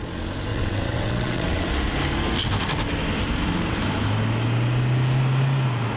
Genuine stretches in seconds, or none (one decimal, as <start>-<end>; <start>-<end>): 0.0-0.5; 1.7-6.0